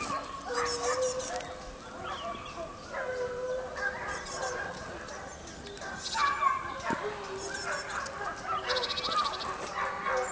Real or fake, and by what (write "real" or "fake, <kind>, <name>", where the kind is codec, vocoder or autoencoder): real